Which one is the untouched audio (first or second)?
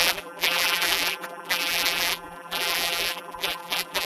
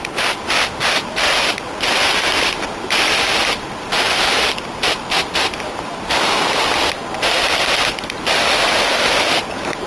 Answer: second